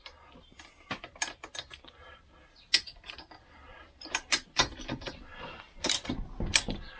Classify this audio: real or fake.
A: real